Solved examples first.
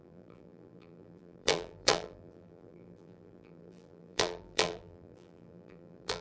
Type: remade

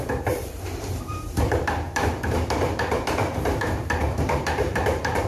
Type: remade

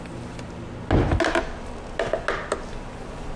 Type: recorded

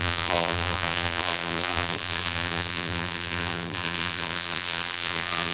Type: remade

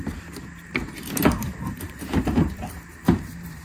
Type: remade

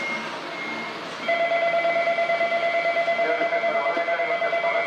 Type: recorded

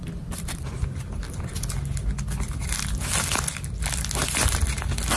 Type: recorded